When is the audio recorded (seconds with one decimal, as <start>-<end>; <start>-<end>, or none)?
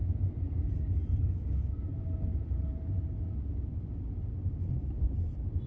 0.0-5.7